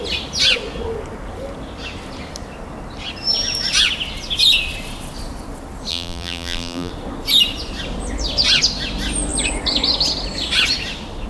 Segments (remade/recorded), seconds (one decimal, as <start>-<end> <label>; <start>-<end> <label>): 0.0-5.9 recorded; 5.9-6.9 remade; 6.9-11.3 recorded